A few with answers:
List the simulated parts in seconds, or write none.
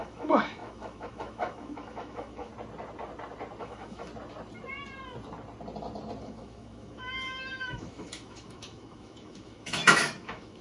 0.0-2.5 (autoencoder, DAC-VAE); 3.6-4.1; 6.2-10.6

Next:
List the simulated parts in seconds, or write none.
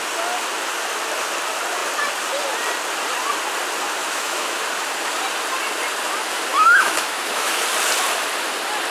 4.0-4.6 (autoencoder, DAC-VAE); 6.5-7.6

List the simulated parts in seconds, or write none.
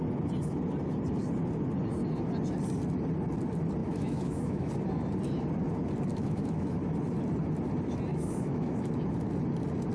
3.8-4.7 (autoencoder, DAC-VAE); 6.1-6.8; 8.1-8.9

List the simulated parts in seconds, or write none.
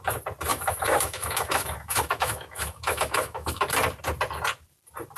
0.5-3.6 (autoencoder, DAC-VAE)